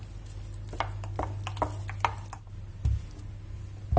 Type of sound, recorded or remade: recorded